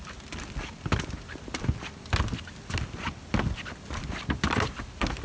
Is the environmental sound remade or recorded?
recorded